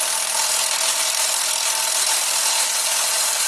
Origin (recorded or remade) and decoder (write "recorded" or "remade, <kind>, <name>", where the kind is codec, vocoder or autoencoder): recorded